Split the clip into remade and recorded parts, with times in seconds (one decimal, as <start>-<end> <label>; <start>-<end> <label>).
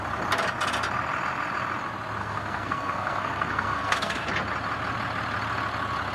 0.0-2.2 recorded; 2.2-4.3 remade; 4.3-6.1 recorded